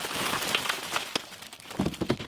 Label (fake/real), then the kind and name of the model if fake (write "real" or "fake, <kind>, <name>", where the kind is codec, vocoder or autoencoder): real